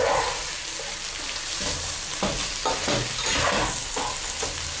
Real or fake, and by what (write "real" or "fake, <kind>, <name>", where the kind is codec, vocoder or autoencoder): real